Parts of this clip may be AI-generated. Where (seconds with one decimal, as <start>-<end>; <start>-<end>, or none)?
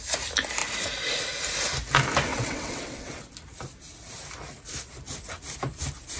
2.3-3.2